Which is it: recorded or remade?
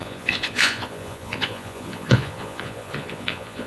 remade